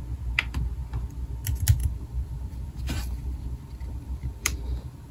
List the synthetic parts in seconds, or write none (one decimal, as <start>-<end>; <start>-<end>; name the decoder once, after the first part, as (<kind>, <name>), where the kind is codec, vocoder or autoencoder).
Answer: 1.8-5.1 (vocoder, BigVGAN v2)